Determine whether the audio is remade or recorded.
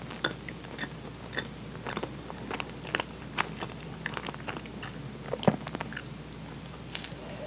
recorded